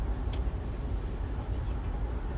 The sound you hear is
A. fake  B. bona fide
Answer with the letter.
B